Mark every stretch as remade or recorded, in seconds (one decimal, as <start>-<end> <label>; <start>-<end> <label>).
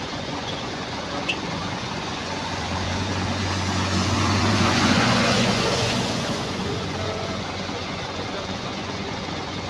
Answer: 0.0-9.7 remade